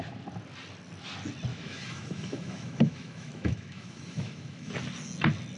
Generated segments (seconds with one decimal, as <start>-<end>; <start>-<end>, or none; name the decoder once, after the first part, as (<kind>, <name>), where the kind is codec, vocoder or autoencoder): 1.5-4.7 (autoencoder, DAC-VAE)